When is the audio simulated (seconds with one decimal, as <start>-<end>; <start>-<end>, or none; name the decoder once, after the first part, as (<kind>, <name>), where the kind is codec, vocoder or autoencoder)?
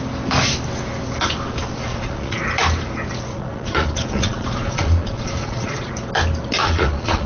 1.9-2.4 (vocoder, Vocos); 3.3-5.9; 6.6-7.3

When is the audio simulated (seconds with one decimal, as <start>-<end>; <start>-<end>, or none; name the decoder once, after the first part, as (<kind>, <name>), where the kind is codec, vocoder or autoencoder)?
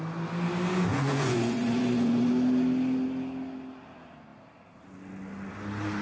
0.9-2.3 (vocoder, Vocos)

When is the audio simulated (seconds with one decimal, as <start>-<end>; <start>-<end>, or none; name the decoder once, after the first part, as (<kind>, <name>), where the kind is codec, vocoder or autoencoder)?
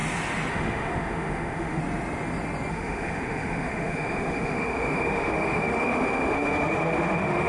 0.5-1.8 (autoencoder, DAC-VAE); 2.7-7.5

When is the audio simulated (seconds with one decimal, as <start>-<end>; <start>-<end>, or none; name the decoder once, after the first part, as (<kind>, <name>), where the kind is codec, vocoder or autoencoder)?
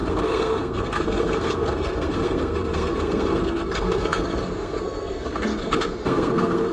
0.0-6.7 (codec, SNAC)